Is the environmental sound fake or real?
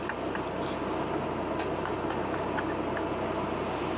real